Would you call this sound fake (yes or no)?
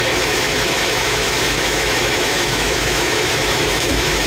yes